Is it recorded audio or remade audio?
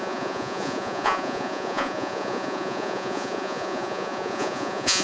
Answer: remade